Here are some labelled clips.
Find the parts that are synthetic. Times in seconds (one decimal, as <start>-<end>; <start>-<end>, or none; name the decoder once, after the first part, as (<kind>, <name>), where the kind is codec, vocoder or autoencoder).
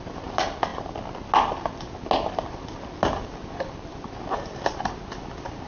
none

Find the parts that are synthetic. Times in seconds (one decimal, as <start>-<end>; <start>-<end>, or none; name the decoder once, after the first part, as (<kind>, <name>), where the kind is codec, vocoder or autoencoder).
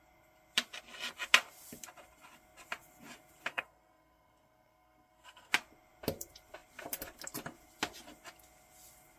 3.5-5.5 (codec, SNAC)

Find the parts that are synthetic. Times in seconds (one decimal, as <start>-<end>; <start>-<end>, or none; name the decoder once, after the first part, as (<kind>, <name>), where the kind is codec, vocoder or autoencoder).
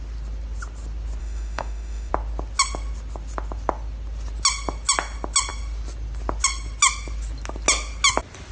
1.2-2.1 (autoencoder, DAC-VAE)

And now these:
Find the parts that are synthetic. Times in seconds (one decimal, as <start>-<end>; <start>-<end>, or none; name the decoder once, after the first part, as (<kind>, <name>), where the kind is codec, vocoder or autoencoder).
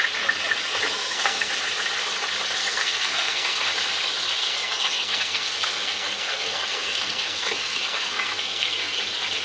1.0-1.5 (codec, SNAC); 2.6-3.7; 4.4-9.0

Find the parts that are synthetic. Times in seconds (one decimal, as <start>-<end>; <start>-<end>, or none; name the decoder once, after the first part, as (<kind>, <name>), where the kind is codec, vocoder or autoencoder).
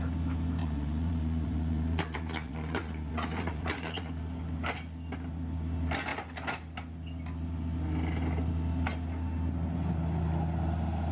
0.6-4.1 (vocoder, Vocos)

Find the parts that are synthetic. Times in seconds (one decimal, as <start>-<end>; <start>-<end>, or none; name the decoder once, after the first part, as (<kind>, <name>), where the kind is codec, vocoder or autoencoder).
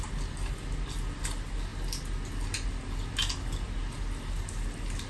none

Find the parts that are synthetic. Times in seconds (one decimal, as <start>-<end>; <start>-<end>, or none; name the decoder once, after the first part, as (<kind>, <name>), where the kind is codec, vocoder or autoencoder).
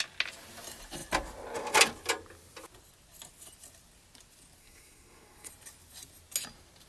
4.6-5.5 (codec, SNAC)